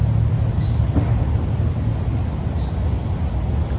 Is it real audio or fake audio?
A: real